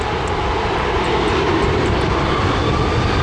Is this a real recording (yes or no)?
yes